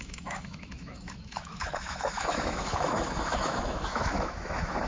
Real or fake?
fake